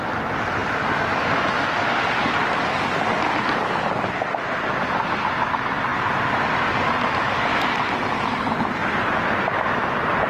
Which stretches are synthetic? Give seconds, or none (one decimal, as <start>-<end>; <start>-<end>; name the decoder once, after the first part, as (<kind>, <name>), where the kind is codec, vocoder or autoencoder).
none